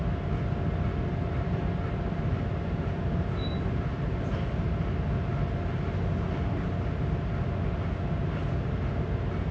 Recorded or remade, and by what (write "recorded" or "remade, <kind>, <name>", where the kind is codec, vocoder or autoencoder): recorded